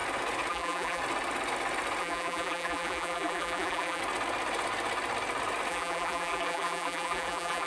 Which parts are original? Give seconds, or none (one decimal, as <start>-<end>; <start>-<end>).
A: 0.0-0.5; 1.0-2.0; 4.0-5.7